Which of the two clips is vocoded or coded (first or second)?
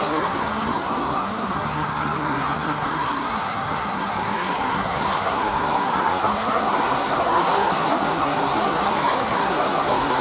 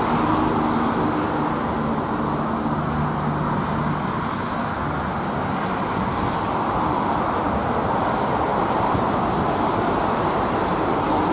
first